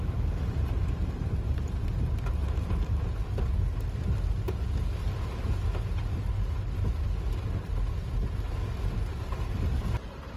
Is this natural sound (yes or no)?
yes